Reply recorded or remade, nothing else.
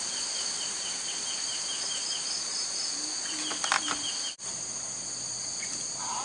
recorded